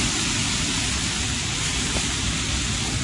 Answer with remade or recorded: recorded